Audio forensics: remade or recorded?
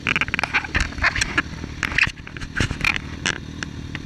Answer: recorded